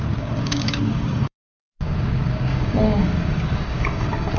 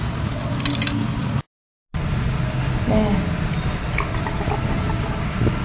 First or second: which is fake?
first